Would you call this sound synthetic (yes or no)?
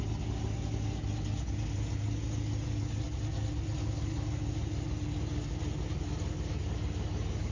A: no